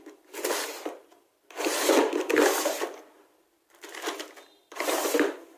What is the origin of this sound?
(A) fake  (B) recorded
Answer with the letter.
B